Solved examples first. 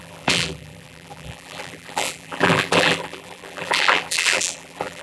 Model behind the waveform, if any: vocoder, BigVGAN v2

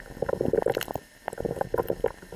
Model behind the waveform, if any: none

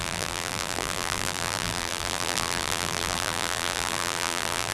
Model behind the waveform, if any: vocoder, BigVGAN v2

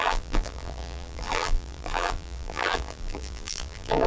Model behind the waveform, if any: vocoder, BigVGAN v2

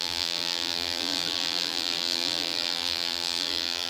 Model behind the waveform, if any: vocoder, BigVGAN v2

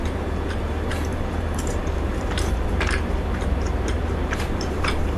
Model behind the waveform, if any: vocoder, BigVGAN v2